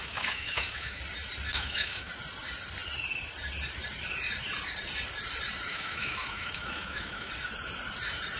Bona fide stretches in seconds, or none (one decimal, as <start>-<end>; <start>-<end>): 1.0-1.5; 2.1-5.7; 7.3-8.4